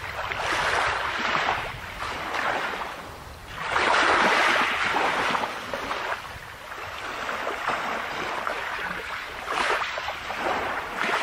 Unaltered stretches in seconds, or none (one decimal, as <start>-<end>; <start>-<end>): 0.0-8.5; 9.8-11.2